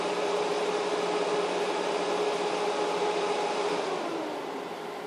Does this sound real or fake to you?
real